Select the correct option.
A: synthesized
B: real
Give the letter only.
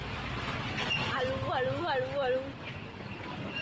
B